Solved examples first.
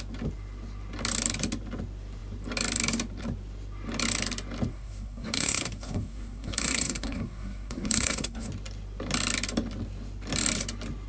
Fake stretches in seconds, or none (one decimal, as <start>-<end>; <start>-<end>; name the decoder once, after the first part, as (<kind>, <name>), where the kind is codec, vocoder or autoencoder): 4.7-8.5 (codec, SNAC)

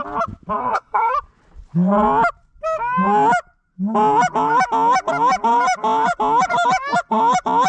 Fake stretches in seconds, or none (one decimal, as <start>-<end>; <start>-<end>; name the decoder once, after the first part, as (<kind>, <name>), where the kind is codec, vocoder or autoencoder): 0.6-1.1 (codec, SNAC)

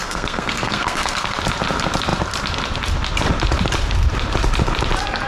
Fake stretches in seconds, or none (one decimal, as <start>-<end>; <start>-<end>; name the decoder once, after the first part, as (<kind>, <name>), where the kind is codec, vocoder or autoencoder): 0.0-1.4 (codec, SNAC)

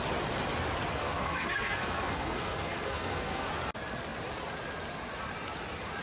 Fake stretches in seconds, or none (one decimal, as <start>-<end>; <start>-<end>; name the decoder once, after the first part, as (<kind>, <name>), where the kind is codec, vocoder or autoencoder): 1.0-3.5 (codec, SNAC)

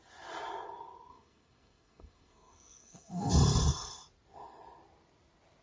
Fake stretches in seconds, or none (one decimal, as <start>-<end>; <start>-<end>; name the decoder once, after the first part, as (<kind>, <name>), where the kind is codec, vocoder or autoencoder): 1.1-3.3 (codec, SNAC)